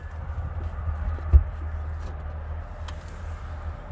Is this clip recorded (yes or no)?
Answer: yes